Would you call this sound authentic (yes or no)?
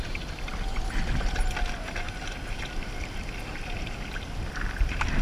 yes